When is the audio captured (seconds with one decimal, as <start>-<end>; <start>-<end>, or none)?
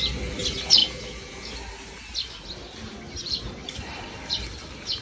0.0-3.2; 4.0-5.0